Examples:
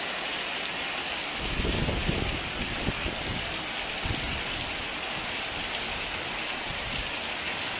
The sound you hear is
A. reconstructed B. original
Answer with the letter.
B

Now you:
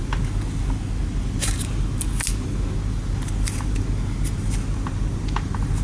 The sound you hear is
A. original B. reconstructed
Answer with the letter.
A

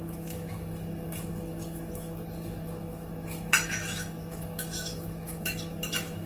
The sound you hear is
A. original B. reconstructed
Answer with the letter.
B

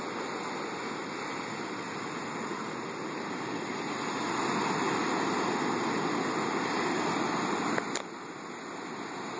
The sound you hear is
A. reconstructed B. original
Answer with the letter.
B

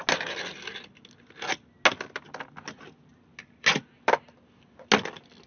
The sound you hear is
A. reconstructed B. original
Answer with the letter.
B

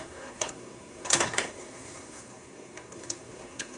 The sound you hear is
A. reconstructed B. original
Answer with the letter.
A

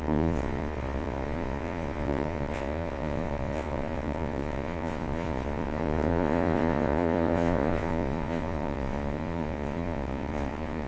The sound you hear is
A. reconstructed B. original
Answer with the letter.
A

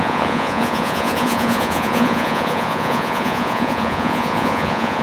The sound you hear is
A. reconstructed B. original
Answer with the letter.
A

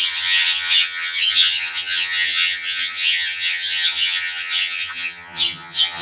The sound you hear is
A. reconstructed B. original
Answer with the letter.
A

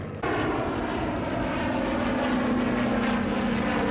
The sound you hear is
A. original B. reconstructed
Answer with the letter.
A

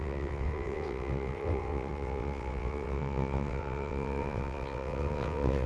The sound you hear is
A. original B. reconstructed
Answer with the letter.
B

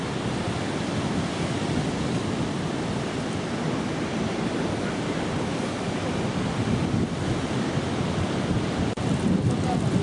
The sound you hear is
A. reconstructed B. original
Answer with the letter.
B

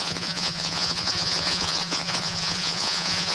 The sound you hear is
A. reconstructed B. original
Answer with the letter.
A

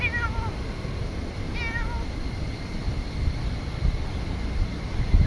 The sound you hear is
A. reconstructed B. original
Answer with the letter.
B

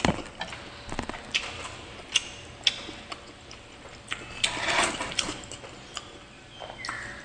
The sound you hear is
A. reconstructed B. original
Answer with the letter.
B